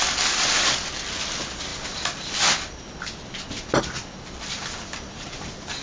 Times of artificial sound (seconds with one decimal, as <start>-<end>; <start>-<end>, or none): none